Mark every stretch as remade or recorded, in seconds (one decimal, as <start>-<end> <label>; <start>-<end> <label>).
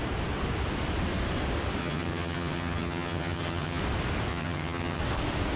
0.0-1.8 recorded; 1.8-3.8 remade; 3.8-4.3 recorded; 4.3-5.0 remade; 5.0-5.6 recorded